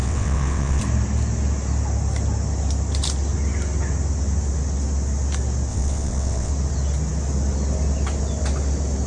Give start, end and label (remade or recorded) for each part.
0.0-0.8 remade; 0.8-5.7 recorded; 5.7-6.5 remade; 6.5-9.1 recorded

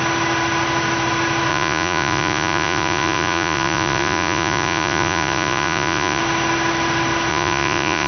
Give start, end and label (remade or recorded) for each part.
0.0-1.5 recorded; 1.5-6.2 remade; 6.2-7.3 recorded; 7.3-8.1 remade

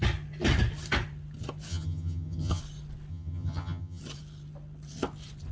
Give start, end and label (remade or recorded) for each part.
0.0-1.7 recorded; 1.7-2.6 remade; 2.6-3.1 recorded; 3.1-4.0 remade; 4.0-5.5 recorded

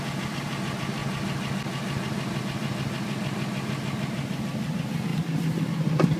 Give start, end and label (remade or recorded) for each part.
0.0-6.2 recorded

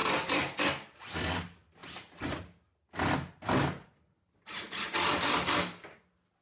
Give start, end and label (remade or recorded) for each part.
0.0-6.4 recorded

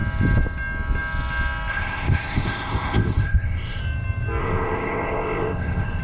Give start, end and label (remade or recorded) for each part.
0.0-1.7 recorded; 1.7-3.8 remade; 3.8-4.4 recorded; 4.4-6.0 remade

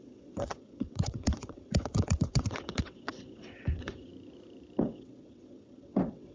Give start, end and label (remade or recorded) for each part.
0.0-4.1 remade; 4.1-4.8 recorded; 4.8-6.3 remade